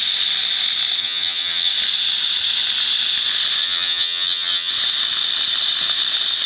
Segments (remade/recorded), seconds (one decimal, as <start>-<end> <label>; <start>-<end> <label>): 0.0-1.0 recorded; 1.0-1.7 remade; 1.7-3.6 recorded; 3.6-4.7 remade; 4.7-6.5 recorded